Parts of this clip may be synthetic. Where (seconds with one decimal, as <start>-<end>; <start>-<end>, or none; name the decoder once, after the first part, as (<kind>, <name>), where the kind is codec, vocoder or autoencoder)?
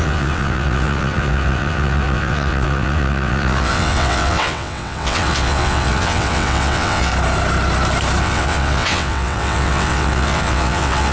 0.0-7.1 (vocoder, WaveNeXt); 8.2-11.1